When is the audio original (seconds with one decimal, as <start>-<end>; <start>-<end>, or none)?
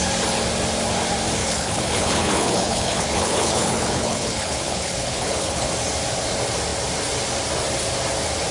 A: 0.0-1.4; 5.7-8.5